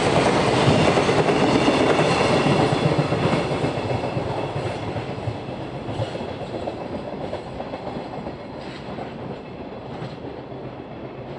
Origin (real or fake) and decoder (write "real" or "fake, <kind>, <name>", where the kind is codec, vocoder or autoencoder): real